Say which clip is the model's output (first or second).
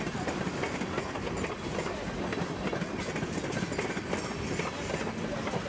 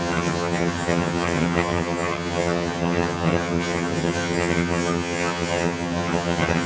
second